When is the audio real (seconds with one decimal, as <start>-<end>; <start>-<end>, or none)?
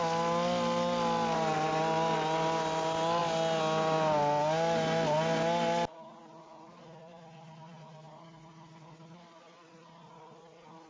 0.0-10.9